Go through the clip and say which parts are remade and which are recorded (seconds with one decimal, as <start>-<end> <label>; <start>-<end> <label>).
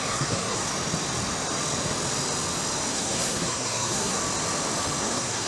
0.0-0.7 remade; 0.7-2.9 recorded; 2.9-4.2 remade; 4.2-5.0 recorded; 5.0-5.5 remade